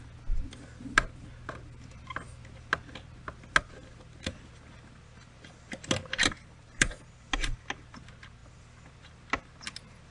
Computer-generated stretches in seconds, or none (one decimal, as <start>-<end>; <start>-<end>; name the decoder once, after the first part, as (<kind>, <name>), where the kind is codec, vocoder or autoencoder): none